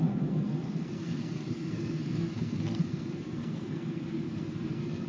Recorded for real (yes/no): no